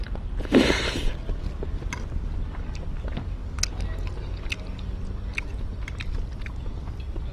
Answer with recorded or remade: recorded